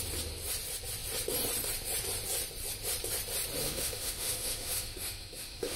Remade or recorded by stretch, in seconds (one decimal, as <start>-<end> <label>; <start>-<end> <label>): 0.0-3.6 recorded; 3.6-5.8 remade